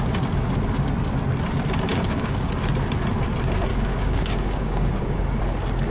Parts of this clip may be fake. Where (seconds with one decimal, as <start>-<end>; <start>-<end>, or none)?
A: 1.9-2.5; 3.7-5.4